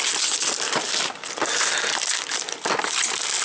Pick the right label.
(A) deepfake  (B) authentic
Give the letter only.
B